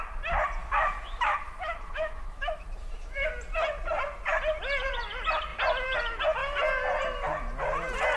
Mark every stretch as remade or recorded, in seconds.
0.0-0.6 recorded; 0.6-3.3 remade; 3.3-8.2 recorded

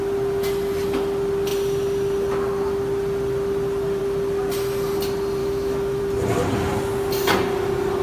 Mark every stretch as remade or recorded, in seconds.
0.0-5.4 recorded; 5.4-6.0 remade; 6.0-8.0 recorded

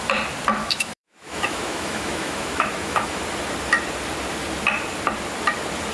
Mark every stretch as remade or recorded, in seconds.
0.0-0.6 recorded; 0.6-3.2 remade; 3.2-5.9 recorded

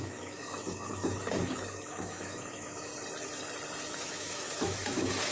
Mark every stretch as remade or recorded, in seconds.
0.0-2.9 remade; 2.9-3.9 recorded; 3.9-5.3 remade

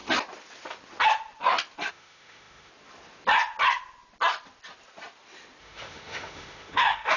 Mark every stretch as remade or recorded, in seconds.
0.0-1.9 recorded; 1.9-2.7 remade; 2.7-5.6 recorded; 5.6-7.2 remade

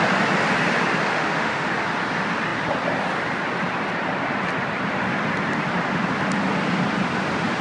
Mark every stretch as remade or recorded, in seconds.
0.0-1.1 recorded; 1.1-1.7 remade; 1.7-7.6 recorded

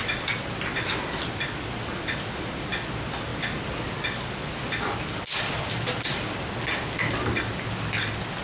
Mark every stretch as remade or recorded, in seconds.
0.0-8.4 recorded